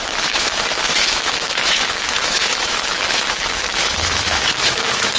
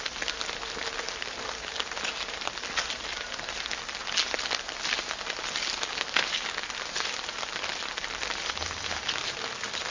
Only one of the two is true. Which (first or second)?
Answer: second